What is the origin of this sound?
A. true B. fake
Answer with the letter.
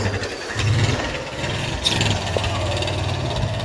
A